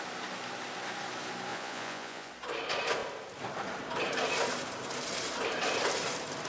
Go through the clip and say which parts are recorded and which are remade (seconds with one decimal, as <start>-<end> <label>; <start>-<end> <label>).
0.0-1.5 recorded; 1.5-2.3 remade; 2.3-6.5 recorded

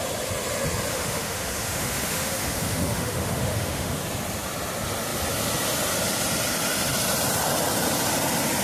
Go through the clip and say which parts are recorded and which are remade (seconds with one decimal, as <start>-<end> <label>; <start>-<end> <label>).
0.0-0.9 recorded; 0.9-4.0 remade; 4.0-8.6 recorded

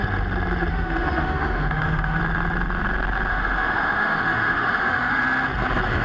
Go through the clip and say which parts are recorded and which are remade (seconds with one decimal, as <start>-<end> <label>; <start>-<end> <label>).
0.0-0.7 recorded; 0.7-2.2 remade; 2.2-3.3 recorded; 3.3-5.2 remade; 5.2-6.0 recorded

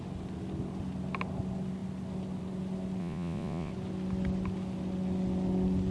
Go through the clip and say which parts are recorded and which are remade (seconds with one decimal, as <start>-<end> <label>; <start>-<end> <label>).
0.0-3.0 recorded; 3.0-3.7 remade; 3.7-5.9 recorded

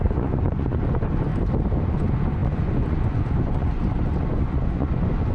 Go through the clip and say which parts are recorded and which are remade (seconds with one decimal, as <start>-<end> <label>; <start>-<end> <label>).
0.0-1.3 remade; 1.3-1.9 recorded; 1.9-5.3 remade

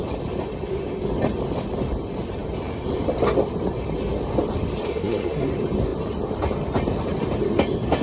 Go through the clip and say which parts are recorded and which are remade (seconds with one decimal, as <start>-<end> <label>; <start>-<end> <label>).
0.0-4.9 recorded; 4.9-5.5 remade; 5.5-8.0 recorded